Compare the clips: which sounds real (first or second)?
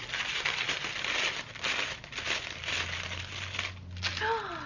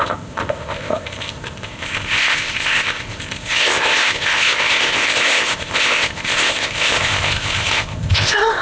first